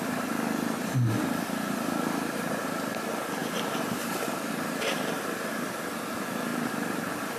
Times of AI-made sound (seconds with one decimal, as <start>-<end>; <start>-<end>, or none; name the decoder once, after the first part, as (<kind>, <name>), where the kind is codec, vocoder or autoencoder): 3.4-4.5 (vocoder, BigVGAN v2); 6.5-7.4